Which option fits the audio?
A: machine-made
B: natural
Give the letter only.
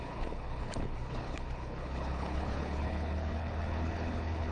A